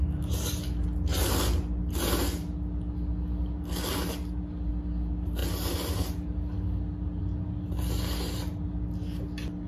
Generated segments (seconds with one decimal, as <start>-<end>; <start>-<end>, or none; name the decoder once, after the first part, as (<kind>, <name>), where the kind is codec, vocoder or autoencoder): none